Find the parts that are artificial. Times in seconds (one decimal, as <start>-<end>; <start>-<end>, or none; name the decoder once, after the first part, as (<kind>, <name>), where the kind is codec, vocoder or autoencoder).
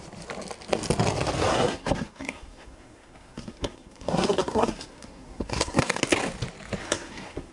1.5-6.0 (codec, SNAC); 6.8-7.5